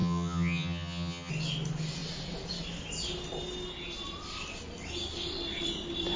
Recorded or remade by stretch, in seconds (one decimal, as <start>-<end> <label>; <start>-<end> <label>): 0.0-1.3 remade; 1.3-6.2 recorded